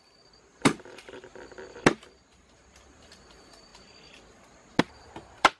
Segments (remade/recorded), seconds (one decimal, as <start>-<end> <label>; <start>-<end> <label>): 0.0-1.3 remade; 1.3-2.2 recorded; 2.2-3.7 remade; 3.7-4.8 recorded; 4.8-5.6 remade